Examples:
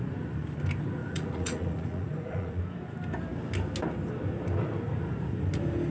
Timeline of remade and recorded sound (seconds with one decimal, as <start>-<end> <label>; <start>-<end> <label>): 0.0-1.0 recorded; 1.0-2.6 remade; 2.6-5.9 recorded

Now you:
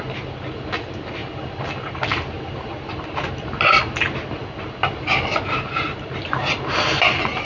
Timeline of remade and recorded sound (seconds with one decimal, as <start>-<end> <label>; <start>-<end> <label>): 0.0-7.4 recorded

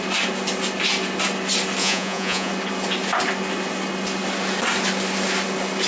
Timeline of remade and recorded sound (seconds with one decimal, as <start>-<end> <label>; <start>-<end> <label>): 0.0-1.8 recorded; 1.8-2.5 remade; 2.5-5.9 recorded